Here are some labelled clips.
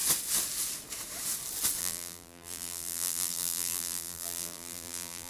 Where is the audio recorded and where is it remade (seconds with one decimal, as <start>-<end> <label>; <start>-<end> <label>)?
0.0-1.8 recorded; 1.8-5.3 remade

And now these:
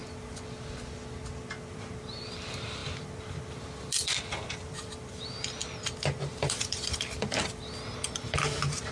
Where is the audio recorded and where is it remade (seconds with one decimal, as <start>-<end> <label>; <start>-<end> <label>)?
0.0-1.7 recorded; 1.7-5.6 remade; 5.6-6.3 recorded; 6.3-8.9 remade

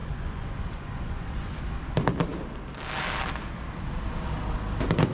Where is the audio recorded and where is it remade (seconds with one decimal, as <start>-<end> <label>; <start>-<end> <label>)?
0.0-1.6 remade; 1.6-5.1 recorded